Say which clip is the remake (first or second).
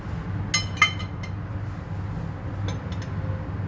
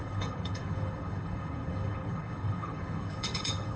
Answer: second